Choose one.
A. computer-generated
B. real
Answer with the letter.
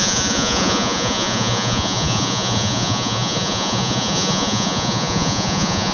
A